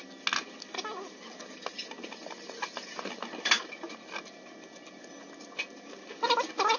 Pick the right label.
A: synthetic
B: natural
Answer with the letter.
B